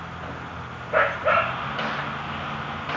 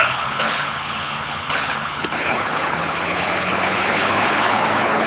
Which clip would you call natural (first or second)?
first